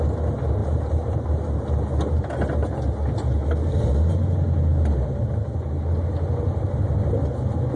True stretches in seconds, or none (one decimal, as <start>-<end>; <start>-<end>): 0.0-0.6; 1.3-4.7; 6.0-7.8